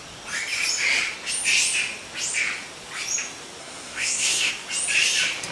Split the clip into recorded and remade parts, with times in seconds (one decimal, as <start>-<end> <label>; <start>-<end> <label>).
0.0-3.6 recorded; 3.6-4.5 remade; 4.5-5.5 recorded